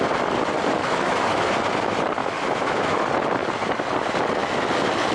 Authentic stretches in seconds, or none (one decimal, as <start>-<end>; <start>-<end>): 0.0-0.8; 1.5-2.2; 3.0-5.1